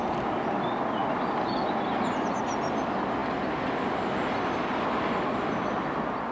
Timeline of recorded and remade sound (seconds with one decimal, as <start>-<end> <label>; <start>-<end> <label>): 0.0-6.3 recorded